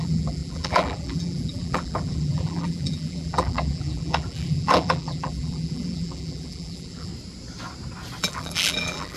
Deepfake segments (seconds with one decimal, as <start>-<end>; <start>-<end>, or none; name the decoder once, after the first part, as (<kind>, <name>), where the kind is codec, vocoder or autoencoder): 0.0-7.1 (vocoder, BigVGAN v2); 8.2-9.2